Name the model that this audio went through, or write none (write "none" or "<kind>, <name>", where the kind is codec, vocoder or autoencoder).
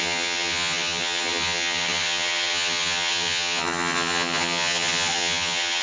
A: vocoder, HiFi-GAN